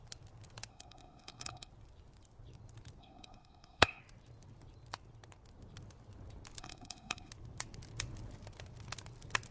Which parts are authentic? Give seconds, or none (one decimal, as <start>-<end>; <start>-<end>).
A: 0.0-0.7; 1.7-3.0; 4.0-6.6; 7.3-9.5